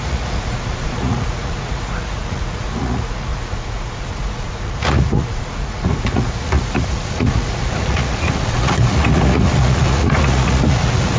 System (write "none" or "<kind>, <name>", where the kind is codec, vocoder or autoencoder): vocoder, Vocos